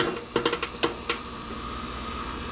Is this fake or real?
real